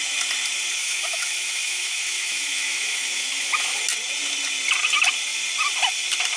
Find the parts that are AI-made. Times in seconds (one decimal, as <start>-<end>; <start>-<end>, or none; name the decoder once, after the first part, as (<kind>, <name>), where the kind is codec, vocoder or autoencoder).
0.8-3.8 (autoencoder, DAC-VAE)